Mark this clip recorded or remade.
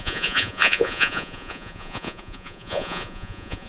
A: remade